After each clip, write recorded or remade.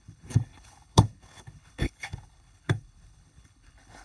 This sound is remade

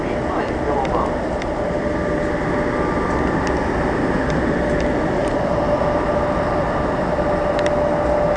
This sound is recorded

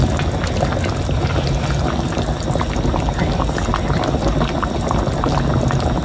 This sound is recorded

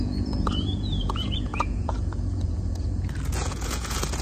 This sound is remade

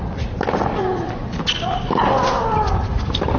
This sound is recorded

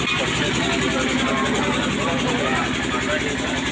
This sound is recorded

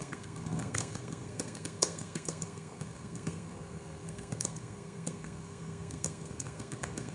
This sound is remade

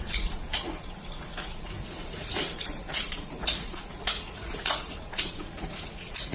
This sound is remade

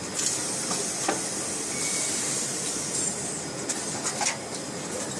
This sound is recorded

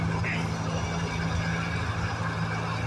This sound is recorded